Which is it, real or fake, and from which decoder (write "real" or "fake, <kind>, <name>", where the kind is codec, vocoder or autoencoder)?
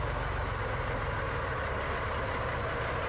real